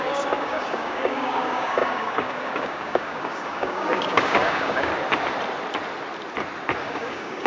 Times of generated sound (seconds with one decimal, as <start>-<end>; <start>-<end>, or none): 0.0-4.9; 6.8-7.5